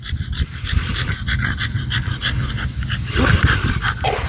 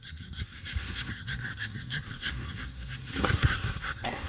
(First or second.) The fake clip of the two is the second